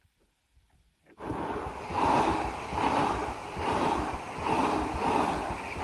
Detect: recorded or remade recorded